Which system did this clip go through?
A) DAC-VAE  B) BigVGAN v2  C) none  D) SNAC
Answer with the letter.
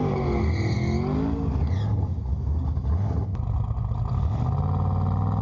C